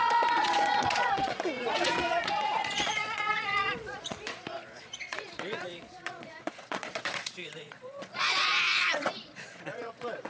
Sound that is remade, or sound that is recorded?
remade